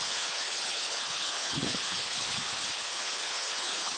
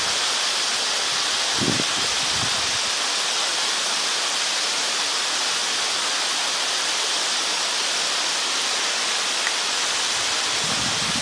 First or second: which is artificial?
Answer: first